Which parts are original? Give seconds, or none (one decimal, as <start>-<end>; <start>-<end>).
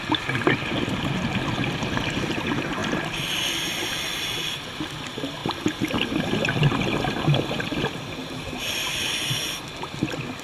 0.0-10.4